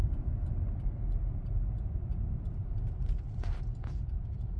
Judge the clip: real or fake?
fake